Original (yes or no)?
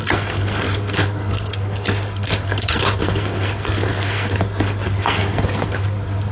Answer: no